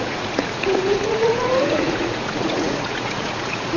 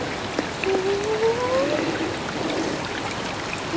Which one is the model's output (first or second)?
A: first